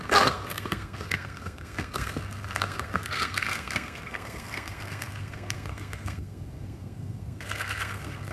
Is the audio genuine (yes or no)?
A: no